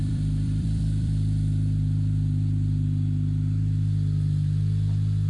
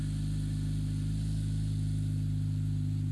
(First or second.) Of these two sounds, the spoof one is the first